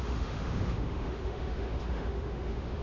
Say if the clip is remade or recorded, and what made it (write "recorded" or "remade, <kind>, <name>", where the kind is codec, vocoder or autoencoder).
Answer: remade, autoencoder, DAC-VAE